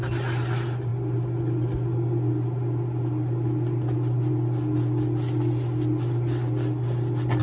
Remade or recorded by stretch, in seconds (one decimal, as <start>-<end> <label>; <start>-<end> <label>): 0.0-7.4 recorded